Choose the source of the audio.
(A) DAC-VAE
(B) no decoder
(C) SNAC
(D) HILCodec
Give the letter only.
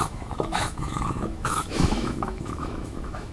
A